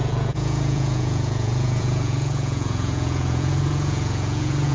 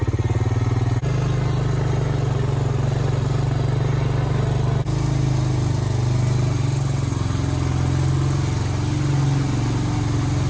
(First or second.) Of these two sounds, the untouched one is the second